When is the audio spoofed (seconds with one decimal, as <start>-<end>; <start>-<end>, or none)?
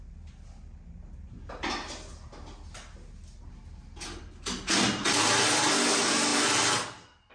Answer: none